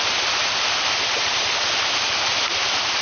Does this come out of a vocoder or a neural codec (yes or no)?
no